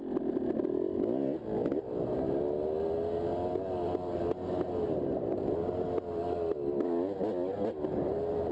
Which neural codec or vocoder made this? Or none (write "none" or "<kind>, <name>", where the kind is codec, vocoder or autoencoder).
none